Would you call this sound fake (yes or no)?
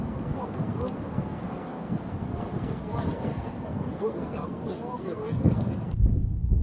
yes